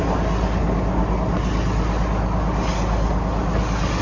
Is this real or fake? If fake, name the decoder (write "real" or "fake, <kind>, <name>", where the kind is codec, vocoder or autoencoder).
real